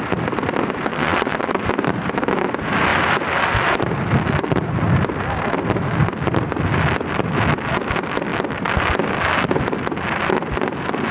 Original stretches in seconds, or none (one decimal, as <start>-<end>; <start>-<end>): 0.0-0.9; 1.6-11.1